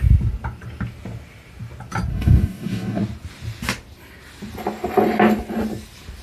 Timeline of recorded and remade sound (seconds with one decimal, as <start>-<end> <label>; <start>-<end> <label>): 0.0-2.1 recorded; 2.1-3.0 remade; 3.0-6.2 recorded